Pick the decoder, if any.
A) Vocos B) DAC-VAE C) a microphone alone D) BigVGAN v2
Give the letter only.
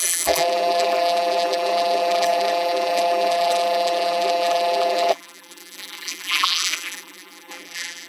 D